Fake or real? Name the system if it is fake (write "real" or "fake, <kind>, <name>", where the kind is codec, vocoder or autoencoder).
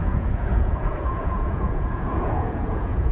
fake, vocoder, Vocos